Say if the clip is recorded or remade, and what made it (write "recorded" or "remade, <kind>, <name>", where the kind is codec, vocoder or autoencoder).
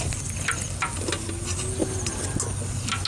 recorded